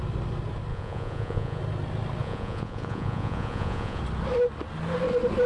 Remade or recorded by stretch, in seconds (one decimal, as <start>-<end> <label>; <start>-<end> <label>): 0.0-0.7 recorded; 0.7-1.6 remade; 1.6-2.2 recorded; 2.2-4.0 remade; 4.0-5.5 recorded